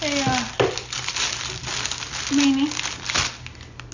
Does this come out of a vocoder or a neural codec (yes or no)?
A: no